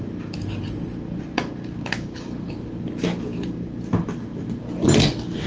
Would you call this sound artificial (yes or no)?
no